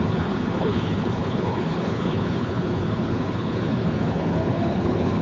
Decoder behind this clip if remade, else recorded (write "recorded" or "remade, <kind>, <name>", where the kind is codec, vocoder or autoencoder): remade, codec, HILCodec